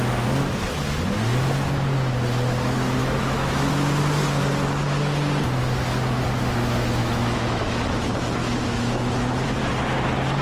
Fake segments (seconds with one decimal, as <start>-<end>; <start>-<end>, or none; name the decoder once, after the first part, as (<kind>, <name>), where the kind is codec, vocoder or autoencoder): 3.0-3.7 (autoencoder, DAC-VAE); 7.0-7.8; 8.4-9.2